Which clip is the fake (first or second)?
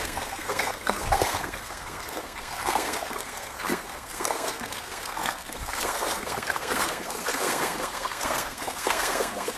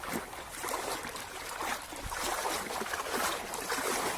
first